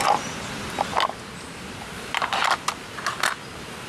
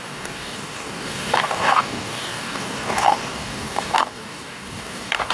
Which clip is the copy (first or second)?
second